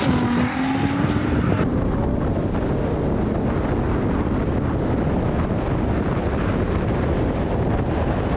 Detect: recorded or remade recorded